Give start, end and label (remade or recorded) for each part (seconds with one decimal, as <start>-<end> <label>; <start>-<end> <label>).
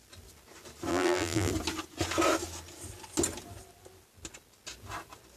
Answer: 0.0-0.9 recorded; 0.9-1.5 remade; 1.5-5.4 recorded